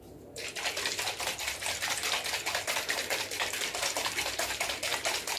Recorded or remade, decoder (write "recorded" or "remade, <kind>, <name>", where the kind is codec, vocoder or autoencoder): recorded